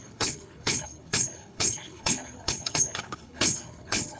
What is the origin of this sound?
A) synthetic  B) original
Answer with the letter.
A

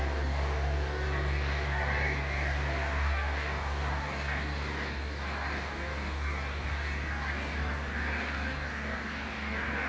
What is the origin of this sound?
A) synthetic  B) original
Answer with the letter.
A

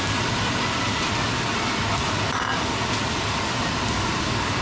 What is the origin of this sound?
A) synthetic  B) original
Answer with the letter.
B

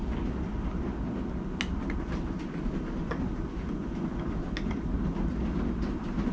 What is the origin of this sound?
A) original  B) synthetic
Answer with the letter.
A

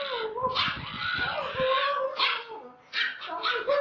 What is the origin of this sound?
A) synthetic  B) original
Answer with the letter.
B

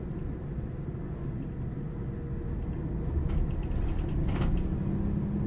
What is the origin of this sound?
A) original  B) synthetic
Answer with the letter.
A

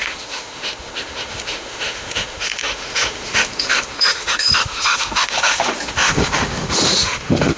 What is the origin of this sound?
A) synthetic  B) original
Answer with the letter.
A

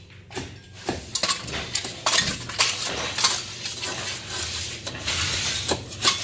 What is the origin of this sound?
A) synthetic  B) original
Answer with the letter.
B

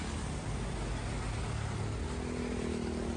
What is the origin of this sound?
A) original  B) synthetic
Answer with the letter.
A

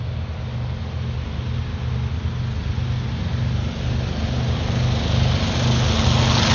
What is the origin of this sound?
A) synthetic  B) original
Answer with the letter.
B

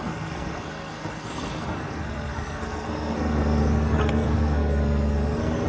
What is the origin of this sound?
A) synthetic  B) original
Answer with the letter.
A